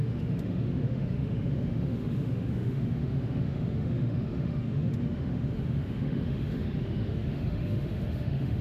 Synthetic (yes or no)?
yes